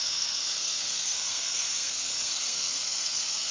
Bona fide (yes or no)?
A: no